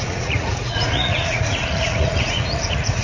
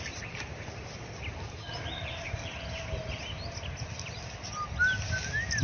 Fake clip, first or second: first